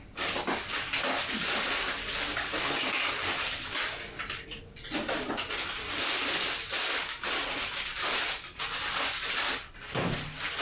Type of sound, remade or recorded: recorded